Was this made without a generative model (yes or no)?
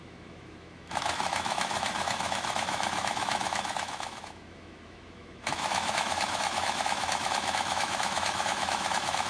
no